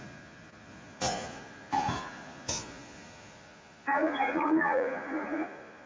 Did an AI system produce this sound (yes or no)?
yes